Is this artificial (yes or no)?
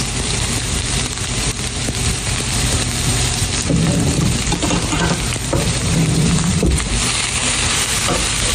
yes